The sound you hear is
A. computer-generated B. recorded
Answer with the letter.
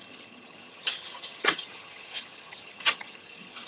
A